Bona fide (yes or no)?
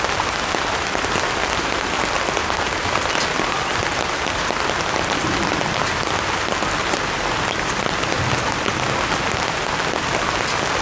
yes